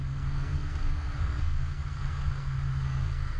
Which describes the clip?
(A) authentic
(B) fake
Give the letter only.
B